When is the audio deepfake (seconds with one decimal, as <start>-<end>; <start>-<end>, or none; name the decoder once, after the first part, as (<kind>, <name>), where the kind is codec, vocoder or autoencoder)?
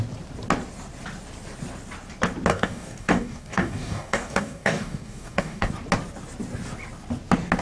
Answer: 2.5-5.7 (codec, DAC)